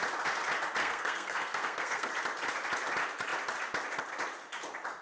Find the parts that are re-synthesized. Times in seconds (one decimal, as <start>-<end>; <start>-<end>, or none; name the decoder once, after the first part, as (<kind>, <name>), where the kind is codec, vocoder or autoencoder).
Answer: 0.8-2.1 (codec, SNAC)